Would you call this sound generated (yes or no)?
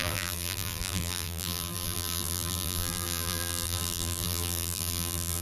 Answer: yes